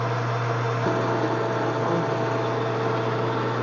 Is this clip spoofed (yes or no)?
no